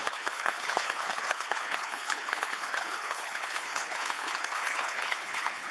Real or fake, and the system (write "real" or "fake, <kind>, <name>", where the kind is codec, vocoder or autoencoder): fake, codec, HILCodec